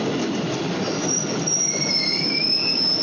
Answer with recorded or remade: recorded